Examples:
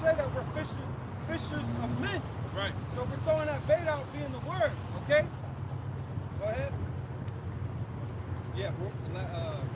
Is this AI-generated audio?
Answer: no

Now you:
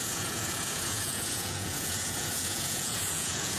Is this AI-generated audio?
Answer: yes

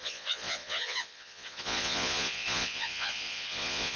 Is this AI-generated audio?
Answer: yes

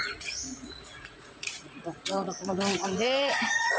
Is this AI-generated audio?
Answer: yes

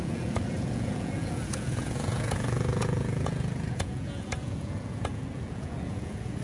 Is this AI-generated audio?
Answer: yes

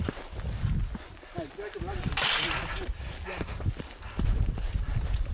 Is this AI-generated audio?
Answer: no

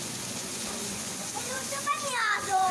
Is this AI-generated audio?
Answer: yes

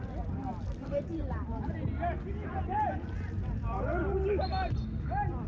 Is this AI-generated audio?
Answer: no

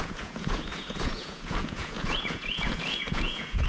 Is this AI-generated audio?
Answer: yes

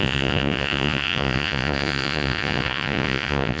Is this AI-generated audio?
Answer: yes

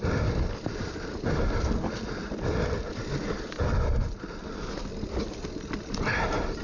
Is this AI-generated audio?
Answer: no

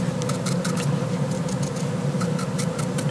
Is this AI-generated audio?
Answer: no